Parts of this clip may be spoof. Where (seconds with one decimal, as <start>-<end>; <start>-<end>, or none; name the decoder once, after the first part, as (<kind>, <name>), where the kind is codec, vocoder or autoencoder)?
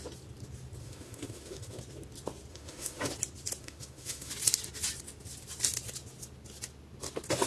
0.8-1.8 (autoencoder, DAC-VAE); 2.5-3.1; 3.6-4.3